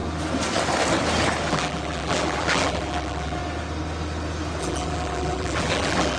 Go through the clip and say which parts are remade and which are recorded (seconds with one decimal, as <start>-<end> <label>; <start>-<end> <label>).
0.0-1.5 recorded; 1.5-3.4 remade; 3.4-4.6 recorded; 4.6-6.2 remade